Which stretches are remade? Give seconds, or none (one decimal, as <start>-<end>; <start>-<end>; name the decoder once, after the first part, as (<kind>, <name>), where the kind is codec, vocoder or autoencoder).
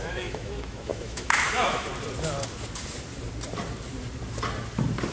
0.0-1.9 (autoencoder, DAC-VAE)